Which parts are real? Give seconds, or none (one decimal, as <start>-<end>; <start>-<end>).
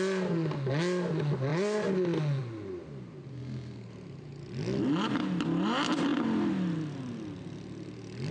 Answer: 0.0-3.3; 3.9-8.3